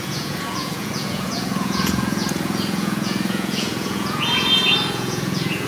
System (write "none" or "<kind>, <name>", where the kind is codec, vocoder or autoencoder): vocoder, Vocos